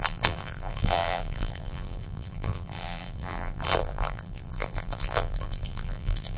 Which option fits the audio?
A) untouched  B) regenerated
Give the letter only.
B